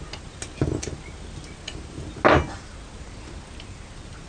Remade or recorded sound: recorded